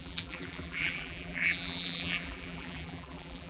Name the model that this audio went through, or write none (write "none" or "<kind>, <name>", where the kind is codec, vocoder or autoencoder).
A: vocoder, BigVGAN v2